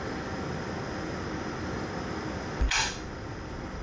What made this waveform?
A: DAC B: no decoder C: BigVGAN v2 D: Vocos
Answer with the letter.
B